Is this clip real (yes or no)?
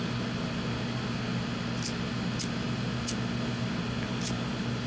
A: yes